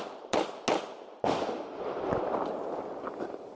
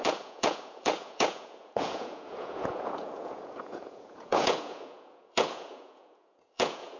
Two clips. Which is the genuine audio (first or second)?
first